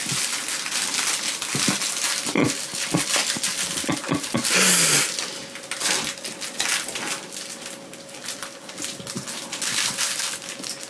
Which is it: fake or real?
real